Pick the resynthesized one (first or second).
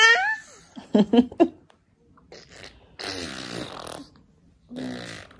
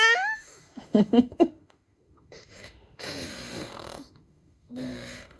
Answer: second